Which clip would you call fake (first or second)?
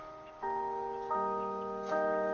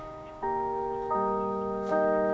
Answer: second